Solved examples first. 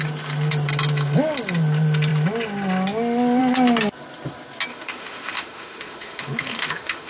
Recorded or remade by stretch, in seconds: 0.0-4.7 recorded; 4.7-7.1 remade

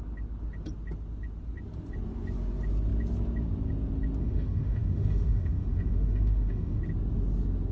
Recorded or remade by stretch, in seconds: 0.0-4.2 recorded; 4.2-6.8 remade; 6.8-7.7 recorded

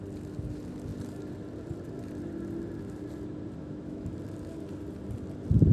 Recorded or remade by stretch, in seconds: 0.0-3.6 recorded; 3.6-4.1 remade; 4.1-5.7 recorded

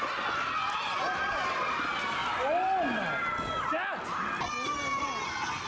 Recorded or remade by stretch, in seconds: 0.0-5.7 recorded

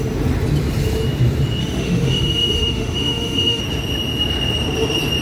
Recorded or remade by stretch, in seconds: 0.0-1.6 recorded; 1.6-3.6 remade; 3.6-5.2 recorded

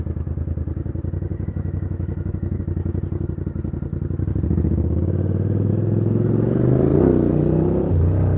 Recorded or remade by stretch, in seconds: 0.0-1.3 recorded; 1.3-2.6 remade; 2.6-8.4 recorded

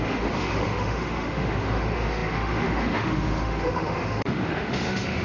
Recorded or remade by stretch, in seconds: 0.0-5.2 remade

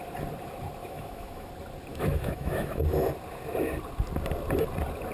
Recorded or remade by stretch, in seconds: 0.0-0.8 recorded; 0.8-1.5 remade; 1.5-1.9 recorded; 1.9-2.8 remade; 2.8-5.1 recorded